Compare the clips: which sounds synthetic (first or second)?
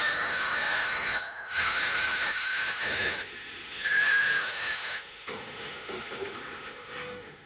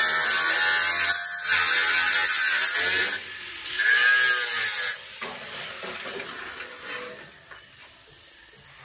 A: first